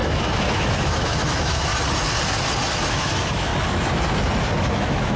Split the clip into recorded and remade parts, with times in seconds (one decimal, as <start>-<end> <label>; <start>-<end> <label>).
0.0-1.7 remade; 1.7-2.9 recorded; 2.9-3.5 remade; 3.5-4.7 recorded; 4.7-5.2 remade